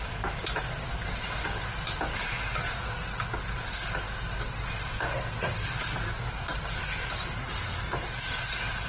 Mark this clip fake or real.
real